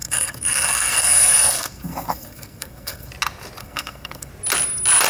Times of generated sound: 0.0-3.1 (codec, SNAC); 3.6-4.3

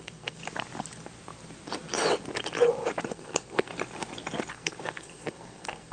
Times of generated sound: 0.0-0.4 (codec, SNAC); 3.1-3.7; 4.5-5.9

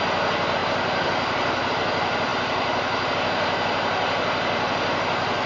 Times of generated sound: none

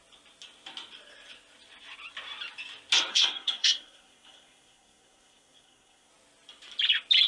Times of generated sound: 3.1-6.1 (codec, SNAC)

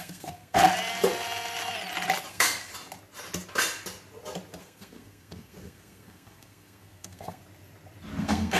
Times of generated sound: 0.0-0.6 (codec, SNAC); 2.3-2.7; 4.6-7.4; 8.2-8.6

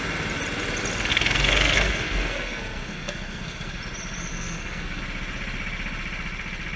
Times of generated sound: 1.1-3.8 (codec, SNAC); 4.3-5.0

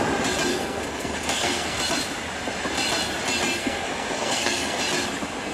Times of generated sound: 0.5-1.8 (codec, SNAC); 3.6-4.8